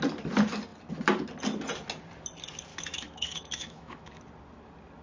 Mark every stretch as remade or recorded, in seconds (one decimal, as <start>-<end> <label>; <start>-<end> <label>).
0.0-2.7 recorded; 2.7-4.2 remade; 4.2-5.0 recorded